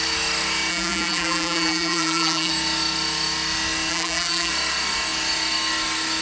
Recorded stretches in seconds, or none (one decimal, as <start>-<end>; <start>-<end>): 0.0-0.7; 2.5-3.9; 4.5-6.2